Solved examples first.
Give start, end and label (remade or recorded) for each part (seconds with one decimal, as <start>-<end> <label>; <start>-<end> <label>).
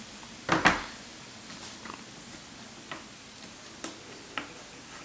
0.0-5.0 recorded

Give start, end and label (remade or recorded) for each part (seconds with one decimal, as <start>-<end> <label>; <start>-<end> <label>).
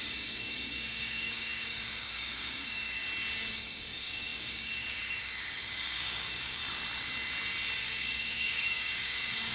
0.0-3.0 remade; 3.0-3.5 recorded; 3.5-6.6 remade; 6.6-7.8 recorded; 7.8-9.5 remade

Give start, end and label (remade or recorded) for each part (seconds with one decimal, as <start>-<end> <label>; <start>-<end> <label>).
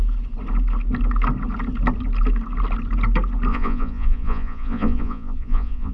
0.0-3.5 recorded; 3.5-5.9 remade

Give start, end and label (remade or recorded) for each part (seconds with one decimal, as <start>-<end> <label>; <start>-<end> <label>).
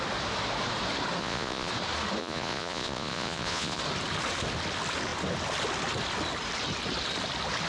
0.0-1.2 recorded; 1.2-1.7 remade; 1.7-2.2 recorded; 2.2-3.8 remade; 3.8-7.7 recorded